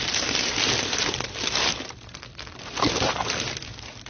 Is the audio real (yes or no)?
yes